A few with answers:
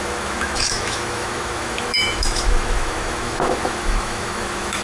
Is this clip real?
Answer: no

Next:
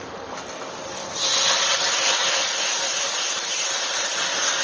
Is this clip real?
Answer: yes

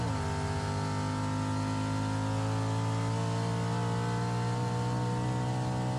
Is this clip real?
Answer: yes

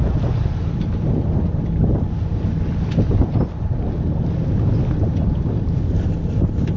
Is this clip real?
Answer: yes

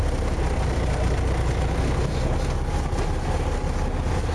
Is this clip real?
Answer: yes